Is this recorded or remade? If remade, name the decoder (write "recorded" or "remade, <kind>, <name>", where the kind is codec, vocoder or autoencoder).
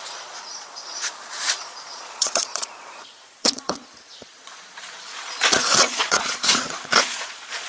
remade, vocoder, Vocos